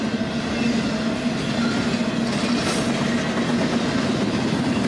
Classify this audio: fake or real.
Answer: real